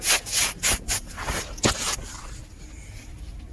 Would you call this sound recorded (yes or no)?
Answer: yes